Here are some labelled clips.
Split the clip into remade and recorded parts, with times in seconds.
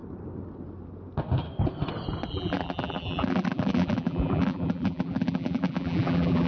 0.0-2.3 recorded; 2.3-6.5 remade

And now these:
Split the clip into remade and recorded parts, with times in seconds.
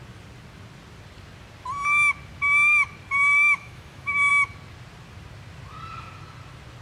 0.0-3.3 recorded; 3.3-4.3 remade; 4.3-6.8 recorded